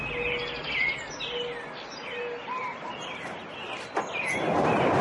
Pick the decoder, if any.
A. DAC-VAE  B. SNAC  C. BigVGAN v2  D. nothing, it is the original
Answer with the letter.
D